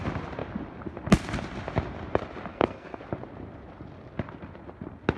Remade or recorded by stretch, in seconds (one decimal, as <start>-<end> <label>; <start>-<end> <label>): 0.0-2.5 recorded; 2.5-3.0 remade; 3.0-5.2 recorded